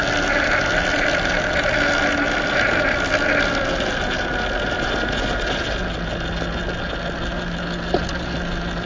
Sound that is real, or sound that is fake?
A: real